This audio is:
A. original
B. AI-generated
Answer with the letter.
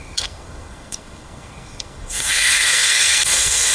B